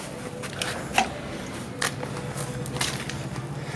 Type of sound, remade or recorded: recorded